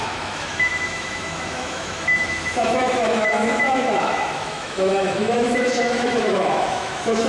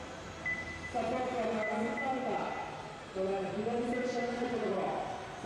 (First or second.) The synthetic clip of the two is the first